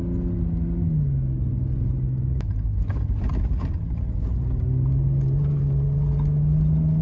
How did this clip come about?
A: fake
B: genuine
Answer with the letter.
B